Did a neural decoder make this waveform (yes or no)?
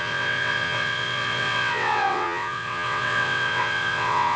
yes